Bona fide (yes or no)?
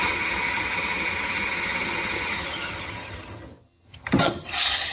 no